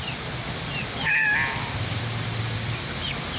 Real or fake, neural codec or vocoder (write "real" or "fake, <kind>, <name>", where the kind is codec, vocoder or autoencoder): real